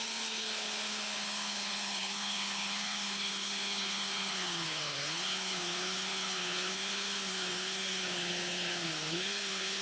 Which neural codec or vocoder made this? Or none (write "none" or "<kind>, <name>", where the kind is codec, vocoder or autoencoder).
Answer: codec, HILCodec